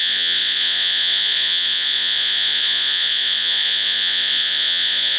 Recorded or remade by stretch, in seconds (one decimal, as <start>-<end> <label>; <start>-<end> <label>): 0.0-5.2 remade

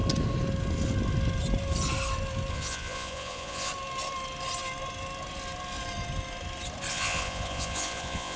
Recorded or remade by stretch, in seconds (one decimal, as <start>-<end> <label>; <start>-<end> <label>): 0.0-2.5 recorded; 2.5-3.7 remade; 3.7-6.9 recorded; 6.9-8.4 remade

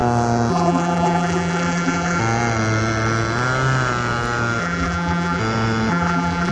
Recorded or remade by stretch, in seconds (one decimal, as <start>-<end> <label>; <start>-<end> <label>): 0.0-0.5 recorded; 0.5-2.2 remade; 2.2-4.6 recorded; 4.6-5.4 remade; 5.4-5.9 recorded; 5.9-6.5 remade

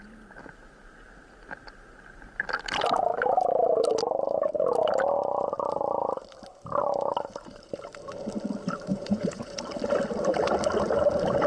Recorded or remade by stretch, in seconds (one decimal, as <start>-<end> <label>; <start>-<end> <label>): 0.0-8.9 recorded; 8.9-9.6 remade; 9.6-11.5 recorded